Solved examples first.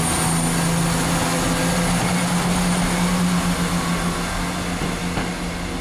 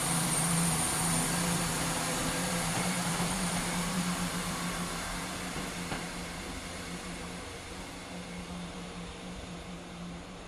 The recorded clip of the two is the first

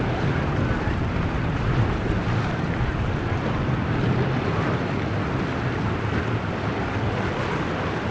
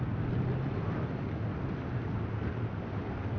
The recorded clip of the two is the second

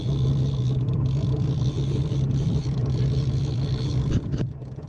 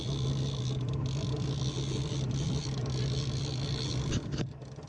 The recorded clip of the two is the second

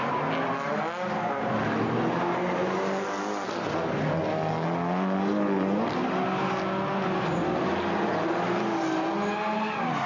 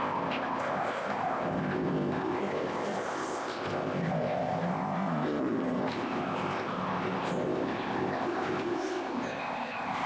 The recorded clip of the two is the first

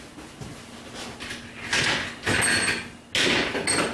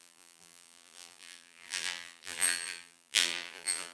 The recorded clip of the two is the first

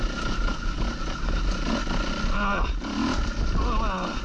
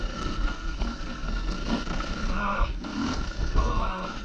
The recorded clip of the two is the first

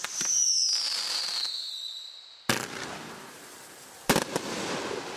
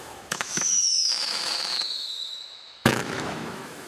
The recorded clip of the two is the first